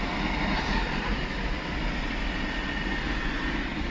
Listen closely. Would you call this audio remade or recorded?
recorded